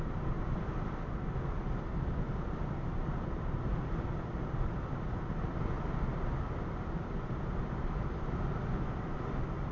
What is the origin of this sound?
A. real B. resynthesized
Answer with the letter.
A